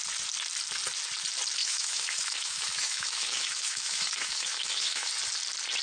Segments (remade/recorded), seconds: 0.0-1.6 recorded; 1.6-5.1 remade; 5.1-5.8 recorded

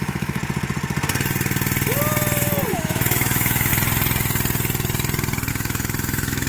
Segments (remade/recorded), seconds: 0.0-0.4 remade; 0.4-2.7 recorded; 2.7-3.7 remade; 3.7-5.5 recorded; 5.5-6.5 remade

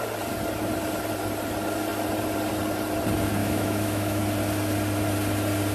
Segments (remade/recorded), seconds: 0.0-3.4 recorded; 3.4-4.2 remade; 4.2-5.7 recorded

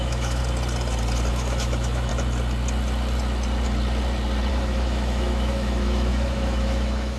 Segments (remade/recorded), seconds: 0.0-0.4 remade; 0.4-1.3 recorded; 1.3-2.1 remade; 2.1-4.5 recorded; 4.5-7.2 remade

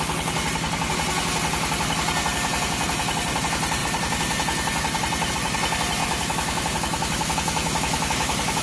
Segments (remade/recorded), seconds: 0.0-6.0 recorded; 6.0-8.6 remade

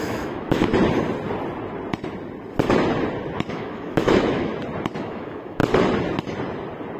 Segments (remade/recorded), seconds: 0.0-0.7 remade; 0.7-3.5 recorded; 3.5-4.5 remade; 4.5-5.0 recorded; 5.0-5.6 remade; 5.6-7.0 recorded

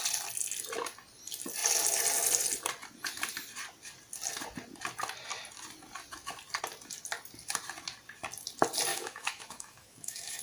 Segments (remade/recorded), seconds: 0.0-8.9 recorded; 8.9-10.4 remade